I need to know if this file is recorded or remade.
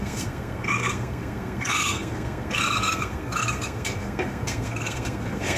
remade